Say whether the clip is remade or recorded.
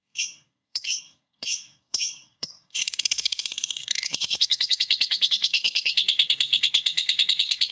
remade